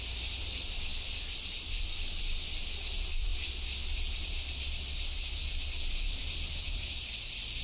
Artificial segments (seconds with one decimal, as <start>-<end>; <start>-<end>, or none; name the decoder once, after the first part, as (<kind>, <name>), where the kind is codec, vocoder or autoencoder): none